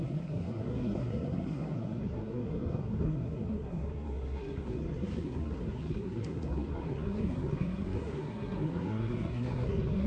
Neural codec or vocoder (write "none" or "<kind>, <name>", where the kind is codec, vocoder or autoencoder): codec, SNAC